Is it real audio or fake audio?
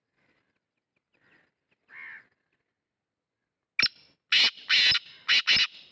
real